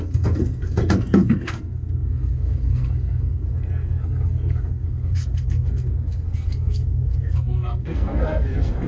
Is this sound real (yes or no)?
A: no